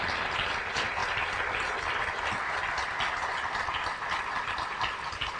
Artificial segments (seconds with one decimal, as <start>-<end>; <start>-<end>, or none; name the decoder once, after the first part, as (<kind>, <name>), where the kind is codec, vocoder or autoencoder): none